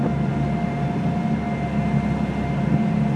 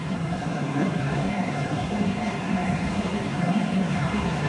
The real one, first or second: first